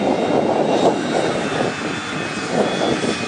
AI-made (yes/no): no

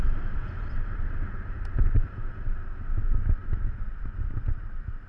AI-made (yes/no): no